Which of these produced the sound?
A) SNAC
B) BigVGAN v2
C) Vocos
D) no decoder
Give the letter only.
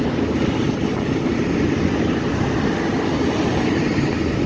D